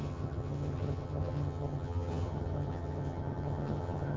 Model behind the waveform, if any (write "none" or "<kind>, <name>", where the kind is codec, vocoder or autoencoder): vocoder, HiFi-GAN